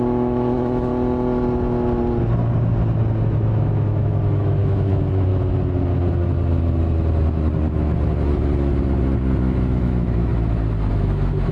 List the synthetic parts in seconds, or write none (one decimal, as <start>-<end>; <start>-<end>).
0.0-0.9; 3.5-5.3; 9.4-10.3; 10.9-11.5